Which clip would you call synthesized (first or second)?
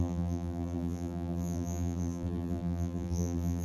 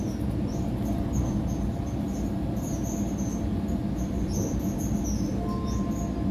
first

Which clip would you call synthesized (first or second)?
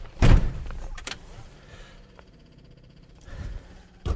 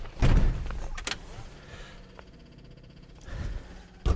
first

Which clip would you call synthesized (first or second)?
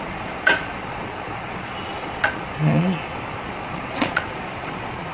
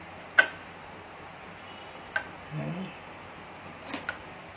first